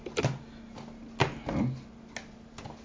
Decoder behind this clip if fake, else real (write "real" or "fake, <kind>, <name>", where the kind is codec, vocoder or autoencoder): real